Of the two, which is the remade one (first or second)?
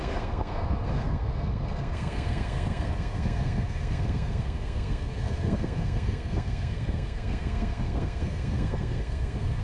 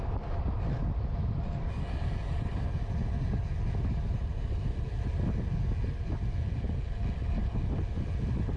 first